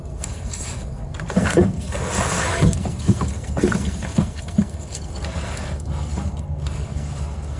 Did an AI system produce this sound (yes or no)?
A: yes